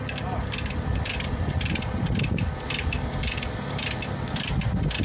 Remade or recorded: recorded